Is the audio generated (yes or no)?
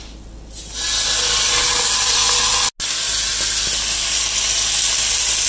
no